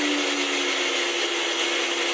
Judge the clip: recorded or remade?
recorded